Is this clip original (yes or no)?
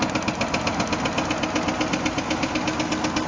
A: yes